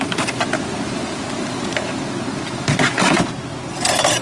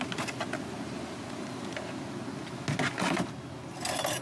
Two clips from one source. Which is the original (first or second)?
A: second